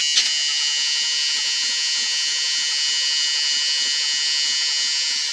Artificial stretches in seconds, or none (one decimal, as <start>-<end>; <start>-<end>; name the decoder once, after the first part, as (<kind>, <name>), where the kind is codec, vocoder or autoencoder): none